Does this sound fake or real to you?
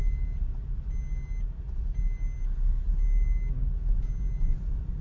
real